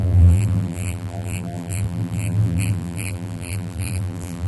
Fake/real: fake